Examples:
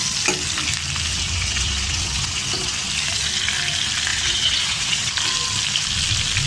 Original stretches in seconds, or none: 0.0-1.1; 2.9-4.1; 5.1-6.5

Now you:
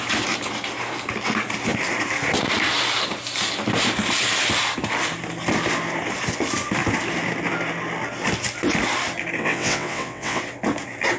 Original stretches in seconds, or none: 0.0-9.4; 10.4-11.2

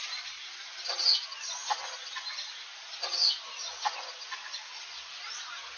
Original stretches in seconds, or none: 0.0-5.8

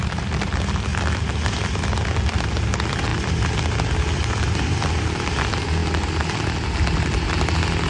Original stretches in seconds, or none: 0.0-7.9